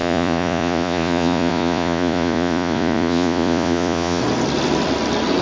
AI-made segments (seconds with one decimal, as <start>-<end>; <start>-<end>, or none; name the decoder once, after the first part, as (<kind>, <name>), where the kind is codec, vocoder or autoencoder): 0.0-4.2 (vocoder, Vocos)